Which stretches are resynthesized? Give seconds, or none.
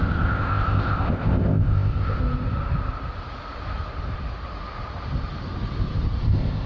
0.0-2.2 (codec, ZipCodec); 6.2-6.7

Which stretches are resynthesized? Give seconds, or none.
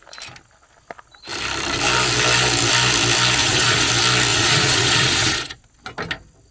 3.4-3.9 (vocoder, Vocos); 4.3-5.6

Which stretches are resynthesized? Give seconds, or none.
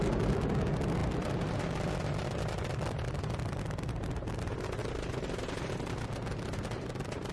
1.0-3.2 (vocoder, BigVGAN v2); 4.8-5.6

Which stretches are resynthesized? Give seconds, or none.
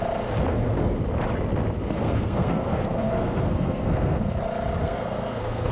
0.5-1.0 (codec, SNAC); 1.8-4.2; 4.8-5.7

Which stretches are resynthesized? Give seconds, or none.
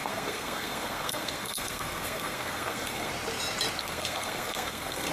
0.0-3.1 (codec, SNAC); 3.8-5.1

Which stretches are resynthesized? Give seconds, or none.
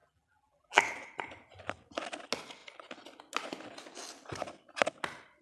0.0-0.8 (vocoder, BigVGAN v2)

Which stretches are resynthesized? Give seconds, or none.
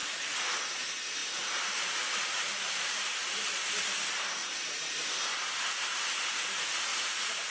1.2-3.5 (vocoder, BigVGAN v2); 4.4-5.1; 6.9-7.5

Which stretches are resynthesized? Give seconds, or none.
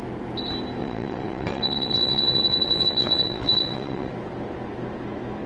0.8-4.1 (vocoder, WaveNeXt)